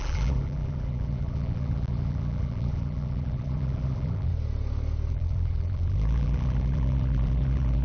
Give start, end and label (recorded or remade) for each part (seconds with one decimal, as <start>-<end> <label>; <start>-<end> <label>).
0.0-4.3 remade; 4.3-5.1 recorded; 5.1-7.8 remade